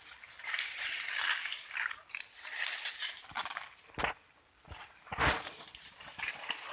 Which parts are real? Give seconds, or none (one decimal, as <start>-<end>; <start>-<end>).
0.0-1.4; 2.1-3.4